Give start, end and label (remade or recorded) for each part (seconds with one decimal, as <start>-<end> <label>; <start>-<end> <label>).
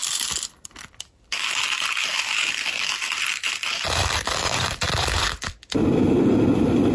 0.0-6.9 remade